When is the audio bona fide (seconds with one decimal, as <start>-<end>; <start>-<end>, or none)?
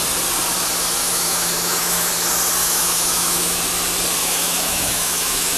0.0-1.0; 2.1-2.6; 3.6-4.2